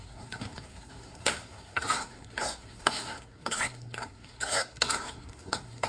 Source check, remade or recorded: remade